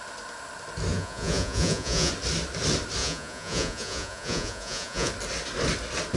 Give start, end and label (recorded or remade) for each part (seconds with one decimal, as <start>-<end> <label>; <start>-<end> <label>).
0.0-0.9 recorded; 0.9-2.1 remade; 2.1-3.0 recorded; 3.0-5.1 remade; 5.1-6.2 recorded